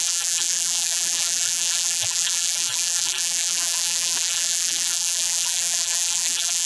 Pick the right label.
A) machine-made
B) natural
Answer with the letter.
A